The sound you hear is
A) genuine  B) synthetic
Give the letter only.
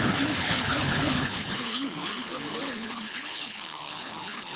B